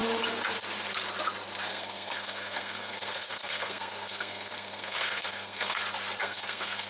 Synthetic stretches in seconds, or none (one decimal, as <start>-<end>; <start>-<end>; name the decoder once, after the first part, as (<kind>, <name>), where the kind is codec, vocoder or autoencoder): 1.7-5.8 (codec, SNAC); 6.2-6.9